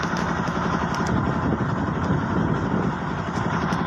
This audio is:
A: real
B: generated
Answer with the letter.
A